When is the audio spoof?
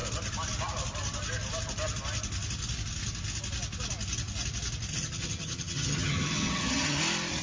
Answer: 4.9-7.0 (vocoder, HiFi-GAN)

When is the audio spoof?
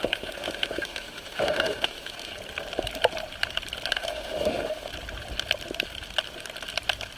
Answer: 0.0-2.3 (autoencoder, DAC-VAE); 3.9-4.9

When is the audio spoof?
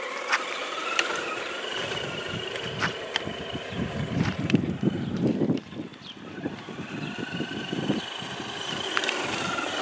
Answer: 0.6-5.2 (vocoder, BigVGAN v2); 5.9-6.9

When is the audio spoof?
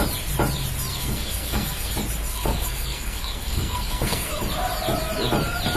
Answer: 0.9-1.9 (codec, SNAC); 2.3-4.4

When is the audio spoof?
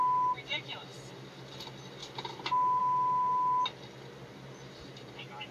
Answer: none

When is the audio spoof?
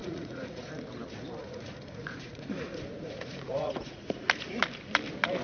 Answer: 0.0-0.7 (vocoder, Vocos); 1.4-4.6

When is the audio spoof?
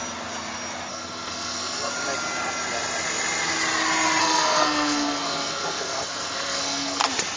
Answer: 0.9-1.9 (codec, SNAC); 4.2-7.0